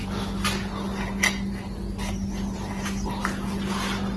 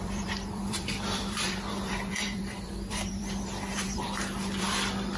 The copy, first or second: second